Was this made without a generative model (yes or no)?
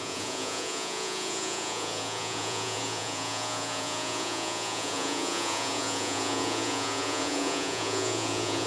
no